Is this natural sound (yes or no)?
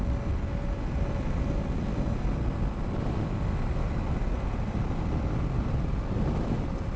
yes